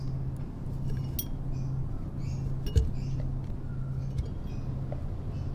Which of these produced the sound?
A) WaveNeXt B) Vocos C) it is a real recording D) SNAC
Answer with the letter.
C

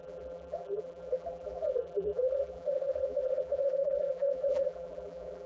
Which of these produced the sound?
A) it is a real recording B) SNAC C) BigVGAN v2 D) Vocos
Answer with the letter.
C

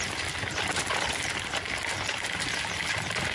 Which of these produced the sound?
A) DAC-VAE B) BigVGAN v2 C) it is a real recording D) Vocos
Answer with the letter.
C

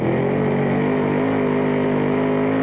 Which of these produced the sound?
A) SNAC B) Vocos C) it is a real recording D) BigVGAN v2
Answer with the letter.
C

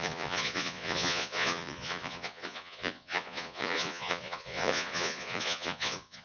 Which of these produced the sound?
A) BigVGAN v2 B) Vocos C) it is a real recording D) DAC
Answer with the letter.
B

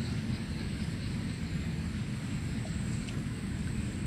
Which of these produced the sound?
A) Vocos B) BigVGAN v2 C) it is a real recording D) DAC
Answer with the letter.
D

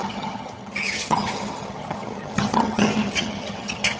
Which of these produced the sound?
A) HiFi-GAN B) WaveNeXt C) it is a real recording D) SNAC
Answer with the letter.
A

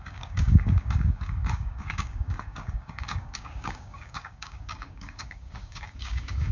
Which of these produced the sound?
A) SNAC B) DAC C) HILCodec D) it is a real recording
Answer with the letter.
B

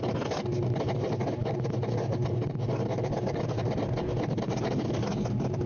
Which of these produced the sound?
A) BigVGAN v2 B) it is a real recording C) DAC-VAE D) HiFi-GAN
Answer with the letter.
B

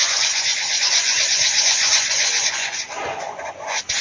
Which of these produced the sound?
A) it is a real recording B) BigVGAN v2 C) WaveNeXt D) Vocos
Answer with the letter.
D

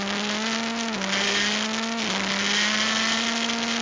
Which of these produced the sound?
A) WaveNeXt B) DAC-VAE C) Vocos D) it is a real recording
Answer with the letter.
D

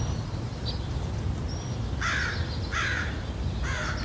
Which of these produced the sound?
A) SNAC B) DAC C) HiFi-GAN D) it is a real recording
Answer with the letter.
D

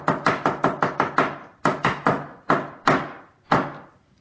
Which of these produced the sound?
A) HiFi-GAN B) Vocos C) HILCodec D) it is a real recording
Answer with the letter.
D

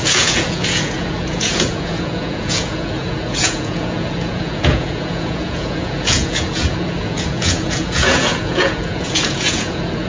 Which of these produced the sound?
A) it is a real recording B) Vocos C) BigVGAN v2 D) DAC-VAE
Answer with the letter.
B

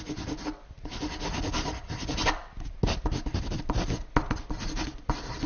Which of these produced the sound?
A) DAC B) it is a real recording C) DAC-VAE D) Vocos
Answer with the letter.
B